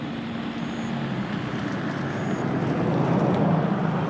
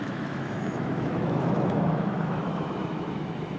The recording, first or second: first